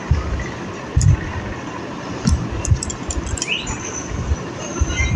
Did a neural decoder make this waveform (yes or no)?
yes